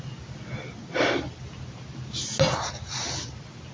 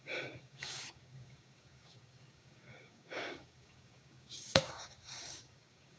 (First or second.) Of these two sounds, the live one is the first